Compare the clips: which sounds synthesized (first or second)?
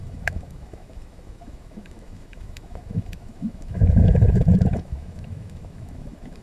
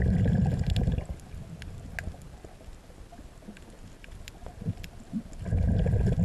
first